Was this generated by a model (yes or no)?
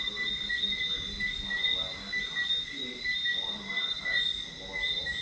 no